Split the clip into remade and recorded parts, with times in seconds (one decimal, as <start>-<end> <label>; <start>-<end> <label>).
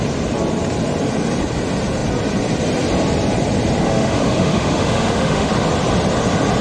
0.0-3.8 recorded; 3.8-5.5 remade; 5.5-6.6 recorded